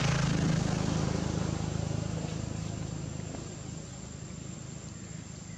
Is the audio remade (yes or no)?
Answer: no